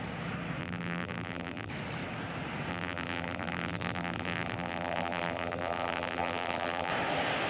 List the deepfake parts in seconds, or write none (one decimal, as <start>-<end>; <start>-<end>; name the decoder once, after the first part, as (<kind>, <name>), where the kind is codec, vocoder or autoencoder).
0.6-1.7 (vocoder, BigVGAN v2); 2.7-6.9